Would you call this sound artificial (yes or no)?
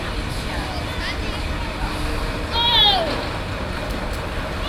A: no